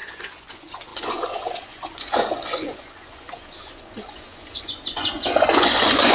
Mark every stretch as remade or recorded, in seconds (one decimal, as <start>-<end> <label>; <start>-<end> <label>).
0.0-6.1 remade